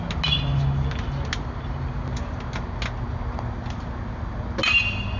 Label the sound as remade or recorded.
recorded